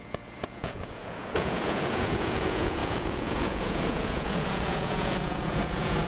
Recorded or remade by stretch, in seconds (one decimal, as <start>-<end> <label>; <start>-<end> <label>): 0.0-6.1 remade